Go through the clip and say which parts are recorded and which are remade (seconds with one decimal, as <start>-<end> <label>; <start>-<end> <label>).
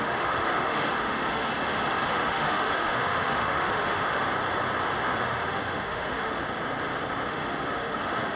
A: 0.0-1.5 remade; 1.5-2.1 recorded; 2.1-4.2 remade; 4.2-5.2 recorded; 5.2-6.4 remade; 6.4-7.3 recorded; 7.3-8.4 remade